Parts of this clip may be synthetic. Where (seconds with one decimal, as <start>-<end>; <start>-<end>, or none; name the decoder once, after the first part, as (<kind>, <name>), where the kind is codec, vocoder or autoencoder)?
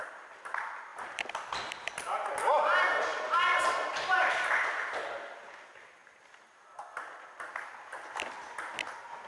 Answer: 0.9-1.7 (vocoder, BigVGAN v2); 6.0-7.5